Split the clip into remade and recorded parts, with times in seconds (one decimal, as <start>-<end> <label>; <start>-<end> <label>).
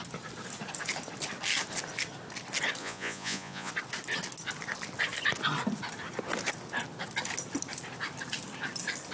0.0-2.8 recorded; 2.8-3.7 remade; 3.7-9.1 recorded